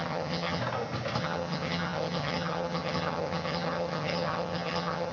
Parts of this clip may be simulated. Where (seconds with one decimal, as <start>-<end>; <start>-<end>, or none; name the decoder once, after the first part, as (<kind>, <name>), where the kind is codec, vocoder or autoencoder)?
0.0-0.6 (vocoder, HiFi-GAN); 1.2-5.1